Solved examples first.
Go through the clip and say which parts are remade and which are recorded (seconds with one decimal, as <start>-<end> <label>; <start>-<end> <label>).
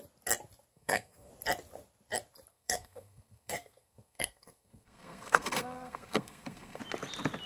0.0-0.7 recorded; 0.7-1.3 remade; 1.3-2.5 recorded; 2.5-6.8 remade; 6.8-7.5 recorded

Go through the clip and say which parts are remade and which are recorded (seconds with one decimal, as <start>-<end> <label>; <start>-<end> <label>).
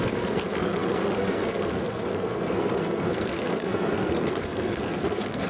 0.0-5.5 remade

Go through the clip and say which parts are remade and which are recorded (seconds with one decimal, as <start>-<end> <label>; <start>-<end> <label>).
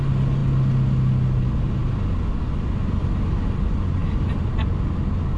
0.0-5.4 recorded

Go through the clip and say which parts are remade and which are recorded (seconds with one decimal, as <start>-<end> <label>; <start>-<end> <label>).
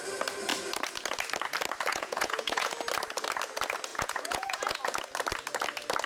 0.0-1.9 recorded; 1.9-2.7 remade; 2.7-3.9 recorded; 3.9-4.8 remade; 4.8-6.1 recorded